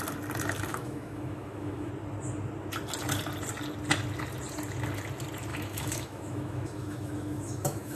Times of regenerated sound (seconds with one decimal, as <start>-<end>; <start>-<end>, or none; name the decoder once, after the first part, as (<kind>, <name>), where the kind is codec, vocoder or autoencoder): 0.7-1.9 (autoencoder, DAC-VAE); 5.5-8.0